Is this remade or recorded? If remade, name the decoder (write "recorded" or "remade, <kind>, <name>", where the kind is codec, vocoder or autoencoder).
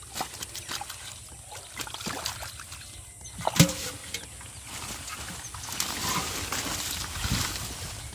recorded